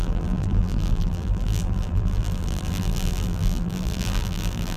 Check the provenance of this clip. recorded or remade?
remade